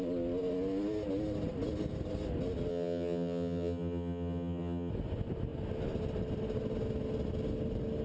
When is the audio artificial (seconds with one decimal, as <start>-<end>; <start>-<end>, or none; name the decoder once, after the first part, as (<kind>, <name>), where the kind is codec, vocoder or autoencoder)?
2.7-4.9 (vocoder, HiFi-GAN)